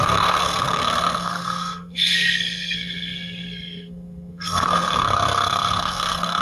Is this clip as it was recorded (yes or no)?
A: no